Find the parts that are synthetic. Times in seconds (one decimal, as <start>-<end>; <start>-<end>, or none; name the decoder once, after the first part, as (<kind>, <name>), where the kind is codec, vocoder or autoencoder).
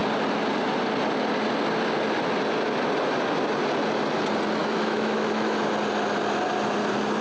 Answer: 4.6-5.7 (autoencoder, DAC-VAE)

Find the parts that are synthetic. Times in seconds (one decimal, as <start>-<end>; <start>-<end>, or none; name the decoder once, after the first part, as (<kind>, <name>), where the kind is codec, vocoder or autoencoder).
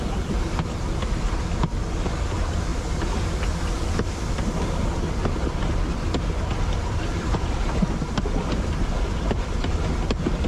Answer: none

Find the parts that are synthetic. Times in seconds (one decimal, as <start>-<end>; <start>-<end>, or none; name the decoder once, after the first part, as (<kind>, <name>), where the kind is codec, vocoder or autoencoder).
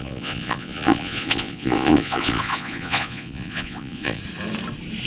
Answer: 0.0-4.2 (vocoder, Vocos)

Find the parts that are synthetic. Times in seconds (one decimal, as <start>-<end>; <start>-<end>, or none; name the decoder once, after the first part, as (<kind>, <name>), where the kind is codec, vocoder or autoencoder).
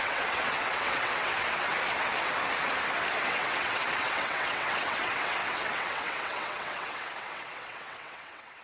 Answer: 0.0-1.7 (vocoder, WaveNeXt); 3.2-8.6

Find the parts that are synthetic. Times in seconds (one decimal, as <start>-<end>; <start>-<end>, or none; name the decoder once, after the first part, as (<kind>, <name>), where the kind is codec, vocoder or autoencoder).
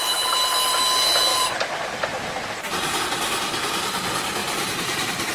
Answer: 1.3-3.0 (vocoder, BigVGAN v2); 4.4-5.3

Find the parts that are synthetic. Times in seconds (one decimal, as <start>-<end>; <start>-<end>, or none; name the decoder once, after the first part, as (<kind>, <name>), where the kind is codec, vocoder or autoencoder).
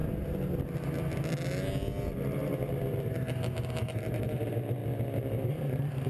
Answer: 3.7-4.8 (vocoder, BigVGAN v2); 5.5-6.1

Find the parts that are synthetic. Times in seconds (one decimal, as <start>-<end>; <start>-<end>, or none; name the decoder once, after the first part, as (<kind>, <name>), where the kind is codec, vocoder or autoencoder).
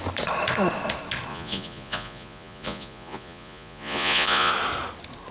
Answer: 1.3-4.5 (vocoder, Vocos)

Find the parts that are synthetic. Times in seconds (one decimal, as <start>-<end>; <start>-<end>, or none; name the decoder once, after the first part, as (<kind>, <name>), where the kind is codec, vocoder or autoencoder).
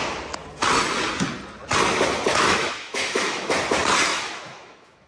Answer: 2.3-3.5 (autoencoder, DAC-VAE); 4.1-5.1